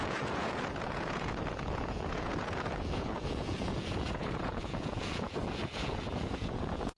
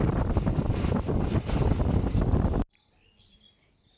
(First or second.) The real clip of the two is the second